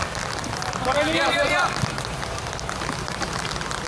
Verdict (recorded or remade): recorded